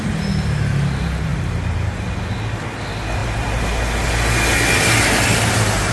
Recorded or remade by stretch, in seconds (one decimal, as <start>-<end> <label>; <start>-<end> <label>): 0.0-5.9 recorded